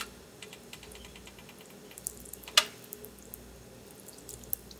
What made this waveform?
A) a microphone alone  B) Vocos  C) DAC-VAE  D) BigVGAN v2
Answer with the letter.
A